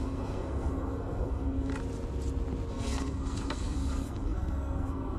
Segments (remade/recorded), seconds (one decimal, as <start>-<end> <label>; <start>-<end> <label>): 0.0-1.7 remade; 1.7-2.7 recorded; 2.7-5.2 remade